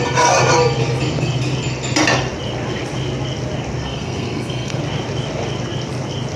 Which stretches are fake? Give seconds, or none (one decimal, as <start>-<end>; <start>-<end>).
3.8-4.8